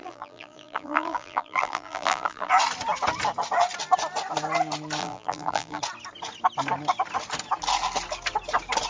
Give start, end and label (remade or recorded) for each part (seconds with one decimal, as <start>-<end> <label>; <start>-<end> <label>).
0.0-2.5 remade; 2.5-5.0 recorded; 5.0-5.8 remade; 5.8-8.9 recorded